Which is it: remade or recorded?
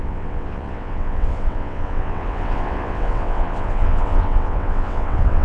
remade